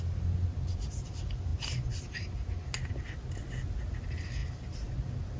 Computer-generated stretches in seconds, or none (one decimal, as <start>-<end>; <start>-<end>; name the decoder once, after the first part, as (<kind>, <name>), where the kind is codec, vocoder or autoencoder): none